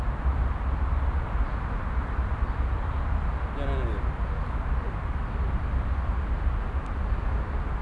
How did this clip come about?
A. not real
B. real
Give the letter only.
B